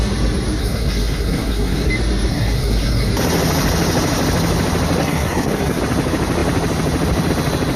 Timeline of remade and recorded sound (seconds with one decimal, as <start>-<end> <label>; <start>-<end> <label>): 0.0-0.6 recorded; 0.6-1.9 remade; 1.9-2.3 recorded; 2.3-3.1 remade; 3.1-5.0 recorded; 5.0-5.8 remade; 5.8-7.8 recorded